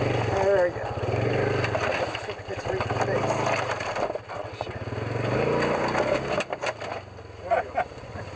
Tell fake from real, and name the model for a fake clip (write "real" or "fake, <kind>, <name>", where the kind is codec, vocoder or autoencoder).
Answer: real